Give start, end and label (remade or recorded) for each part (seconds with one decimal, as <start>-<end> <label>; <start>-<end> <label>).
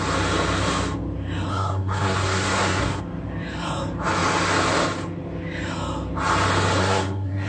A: 0.0-1.5 recorded; 1.5-3.0 remade; 3.0-6.8 recorded; 6.8-7.5 remade